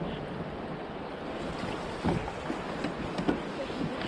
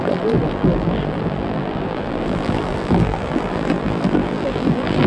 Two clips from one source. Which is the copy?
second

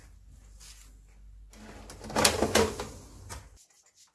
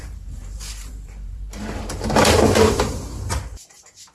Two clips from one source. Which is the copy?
second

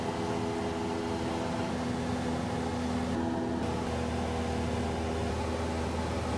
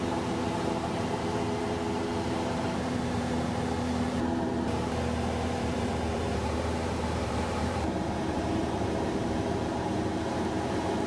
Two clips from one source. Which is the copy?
second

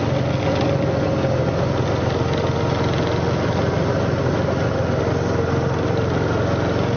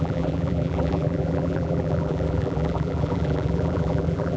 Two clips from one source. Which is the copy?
second